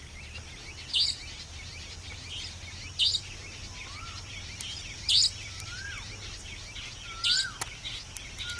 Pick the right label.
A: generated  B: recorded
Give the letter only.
B